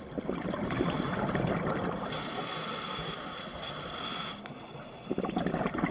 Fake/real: real